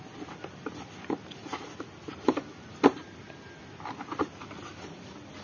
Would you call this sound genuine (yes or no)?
yes